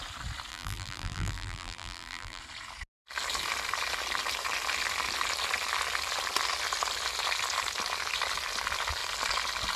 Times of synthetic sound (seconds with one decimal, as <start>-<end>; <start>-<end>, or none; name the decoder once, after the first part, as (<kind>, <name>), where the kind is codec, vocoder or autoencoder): 0.5-2.4 (vocoder, BigVGAN v2)

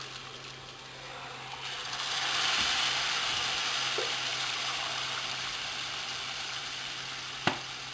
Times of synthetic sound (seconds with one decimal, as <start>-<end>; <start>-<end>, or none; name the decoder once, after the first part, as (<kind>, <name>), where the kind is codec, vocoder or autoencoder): 4.3-6.6 (vocoder, BigVGAN v2)

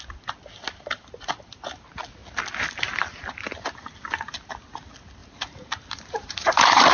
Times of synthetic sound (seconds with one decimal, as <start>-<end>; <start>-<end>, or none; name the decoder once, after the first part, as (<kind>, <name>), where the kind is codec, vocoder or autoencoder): 5.2-6.9 (vocoder, BigVGAN v2)

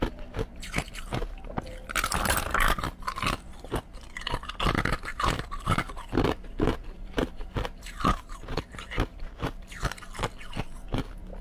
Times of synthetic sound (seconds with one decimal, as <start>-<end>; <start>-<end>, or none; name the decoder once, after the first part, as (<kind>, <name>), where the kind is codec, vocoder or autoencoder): 0.5-1.5 (vocoder, BigVGAN v2); 5.1-8.6; 9.1-9.9